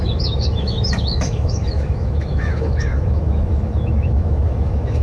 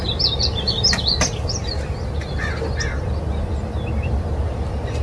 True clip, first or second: second